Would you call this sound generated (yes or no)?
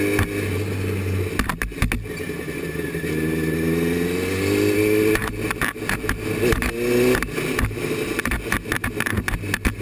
no